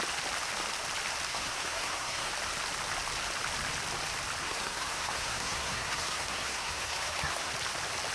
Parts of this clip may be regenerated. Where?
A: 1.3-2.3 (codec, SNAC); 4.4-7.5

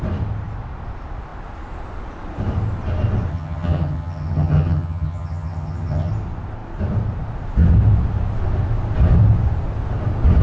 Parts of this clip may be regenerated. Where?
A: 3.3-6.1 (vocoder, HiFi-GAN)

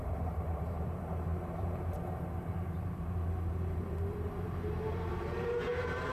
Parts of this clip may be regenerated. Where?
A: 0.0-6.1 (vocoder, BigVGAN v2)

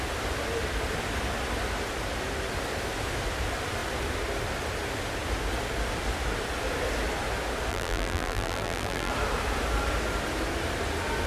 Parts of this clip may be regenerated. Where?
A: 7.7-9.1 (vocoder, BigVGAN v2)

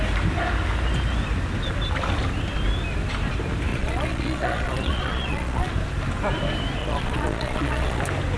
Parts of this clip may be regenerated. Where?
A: 3.7-5.7 (vocoder, Vocos); 6.8-8.0

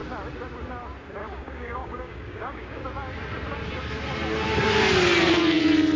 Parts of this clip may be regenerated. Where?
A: 1.2-2.8 (codec, DAC)

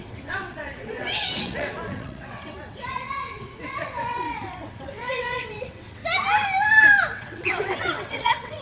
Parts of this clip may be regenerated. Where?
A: 0.0-6.0 (vocoder, WaveNeXt); 7.0-8.6